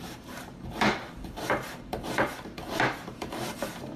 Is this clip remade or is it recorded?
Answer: remade